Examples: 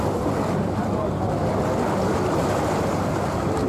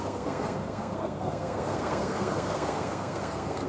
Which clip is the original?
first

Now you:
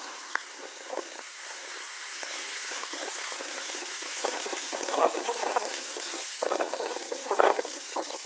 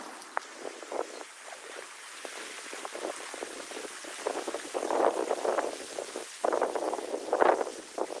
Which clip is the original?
second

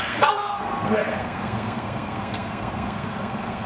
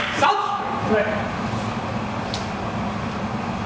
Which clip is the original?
second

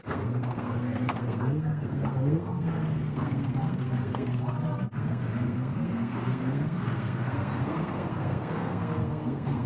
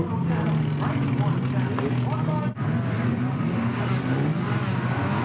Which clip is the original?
second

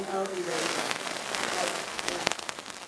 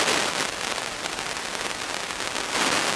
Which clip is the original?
second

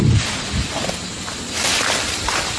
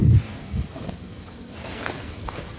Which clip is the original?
first